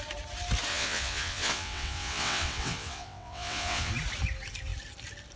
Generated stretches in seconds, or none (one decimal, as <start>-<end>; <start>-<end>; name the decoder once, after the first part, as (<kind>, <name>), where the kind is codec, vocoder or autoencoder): 0.7-3.9 (vocoder, WaveNeXt)